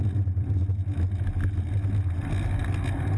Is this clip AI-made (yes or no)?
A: no